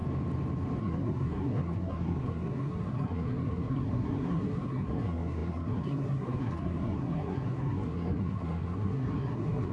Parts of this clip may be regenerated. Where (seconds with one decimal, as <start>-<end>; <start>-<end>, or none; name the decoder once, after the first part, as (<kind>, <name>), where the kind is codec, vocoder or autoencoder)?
0.8-9.7 (codec, SNAC)